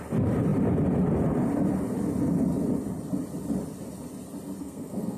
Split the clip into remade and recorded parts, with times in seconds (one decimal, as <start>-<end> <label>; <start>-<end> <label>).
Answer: 0.0-4.6 recorded; 4.6-5.2 remade